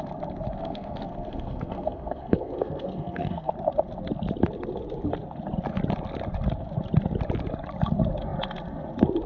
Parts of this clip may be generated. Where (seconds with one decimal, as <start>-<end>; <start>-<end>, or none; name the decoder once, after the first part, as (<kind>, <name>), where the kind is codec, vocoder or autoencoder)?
0.6-3.5 (codec, SNAC)